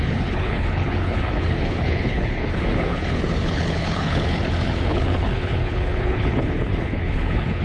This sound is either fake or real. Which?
fake